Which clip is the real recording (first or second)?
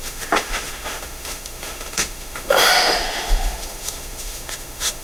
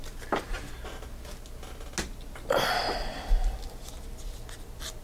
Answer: second